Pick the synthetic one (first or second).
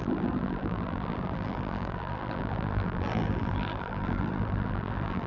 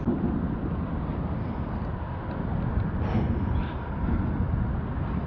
first